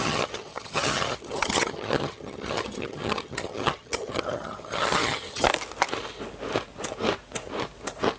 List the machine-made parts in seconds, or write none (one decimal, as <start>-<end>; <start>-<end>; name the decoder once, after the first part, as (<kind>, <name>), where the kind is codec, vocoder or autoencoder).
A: 0.0-5.5 (vocoder, HiFi-GAN)